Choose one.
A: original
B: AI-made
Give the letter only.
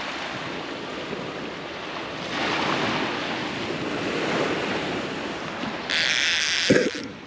A